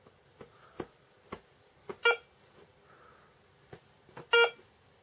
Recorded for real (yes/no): yes